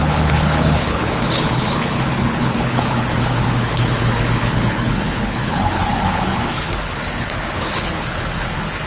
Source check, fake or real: fake